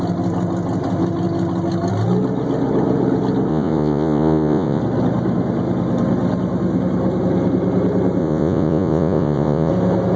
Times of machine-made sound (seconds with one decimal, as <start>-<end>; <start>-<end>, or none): 3.5-4.8; 8.2-9.7